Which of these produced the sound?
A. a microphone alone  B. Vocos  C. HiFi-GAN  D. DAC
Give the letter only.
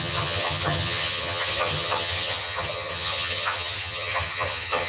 C